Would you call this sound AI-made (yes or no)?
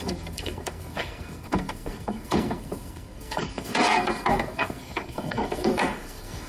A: yes